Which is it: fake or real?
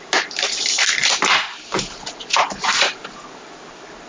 real